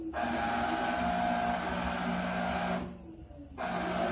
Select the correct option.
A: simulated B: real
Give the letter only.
B